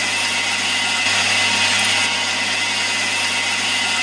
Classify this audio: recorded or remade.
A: recorded